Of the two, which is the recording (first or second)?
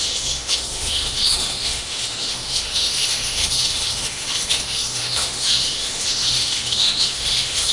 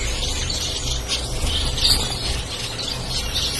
second